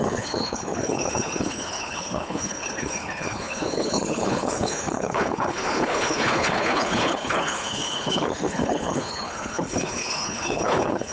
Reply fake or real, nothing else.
fake